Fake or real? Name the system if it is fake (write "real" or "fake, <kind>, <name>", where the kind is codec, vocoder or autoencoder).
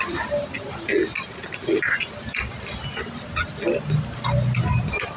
real